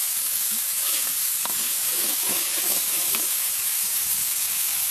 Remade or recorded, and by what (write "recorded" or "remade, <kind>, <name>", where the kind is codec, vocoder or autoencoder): remade, codec, DAC